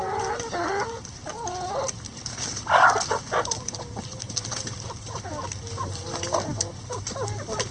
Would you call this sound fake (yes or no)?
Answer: yes